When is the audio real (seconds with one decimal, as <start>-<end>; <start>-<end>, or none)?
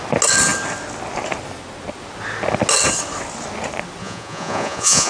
0.0-4.0